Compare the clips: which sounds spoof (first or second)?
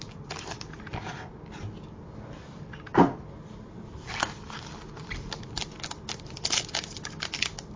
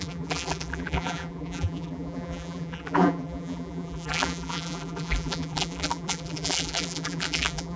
second